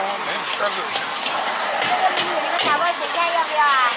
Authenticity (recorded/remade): recorded